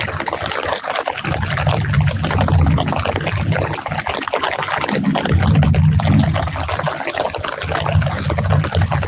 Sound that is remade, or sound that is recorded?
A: recorded